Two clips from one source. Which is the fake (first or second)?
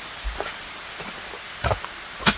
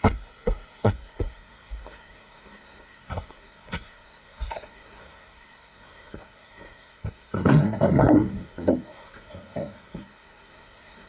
second